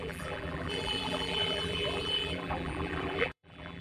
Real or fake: fake